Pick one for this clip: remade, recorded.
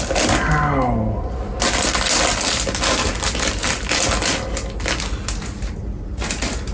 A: recorded